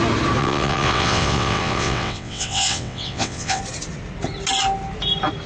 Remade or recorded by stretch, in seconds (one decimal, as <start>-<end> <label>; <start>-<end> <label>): 0.0-0.4 recorded; 0.4-3.6 remade; 3.6-5.5 recorded